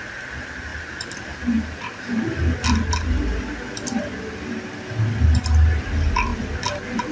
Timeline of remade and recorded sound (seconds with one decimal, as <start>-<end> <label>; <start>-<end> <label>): 0.0-7.1 recorded